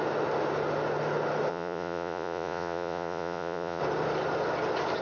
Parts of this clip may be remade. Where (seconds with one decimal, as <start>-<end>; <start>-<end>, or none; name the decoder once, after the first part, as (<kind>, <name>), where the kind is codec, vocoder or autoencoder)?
1.5-3.8 (vocoder, Vocos)